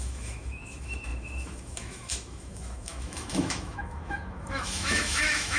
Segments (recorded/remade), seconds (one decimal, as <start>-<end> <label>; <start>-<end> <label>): 0.0-5.6 remade